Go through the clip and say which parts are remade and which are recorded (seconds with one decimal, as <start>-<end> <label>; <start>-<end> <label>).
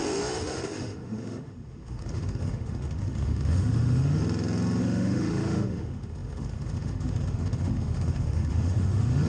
0.0-4.2 remade; 4.2-4.8 recorded; 4.8-9.3 remade